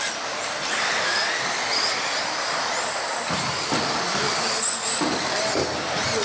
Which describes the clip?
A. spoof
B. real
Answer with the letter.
B